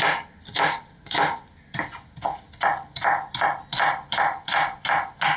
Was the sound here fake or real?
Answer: real